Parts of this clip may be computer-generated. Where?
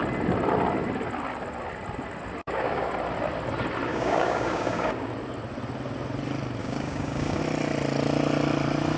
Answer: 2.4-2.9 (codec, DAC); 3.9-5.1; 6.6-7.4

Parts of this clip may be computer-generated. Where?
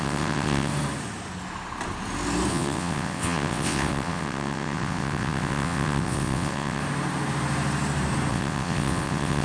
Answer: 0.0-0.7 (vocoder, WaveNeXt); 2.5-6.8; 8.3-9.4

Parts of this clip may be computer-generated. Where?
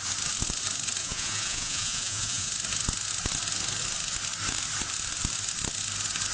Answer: 1.0-2.5 (vocoder, Vocos)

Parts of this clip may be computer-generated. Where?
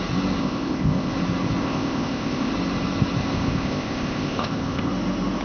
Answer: 0.4-1.1 (codec, ZipCodec); 1.6-2.5; 3.2-4.9